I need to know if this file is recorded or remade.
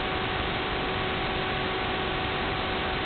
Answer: recorded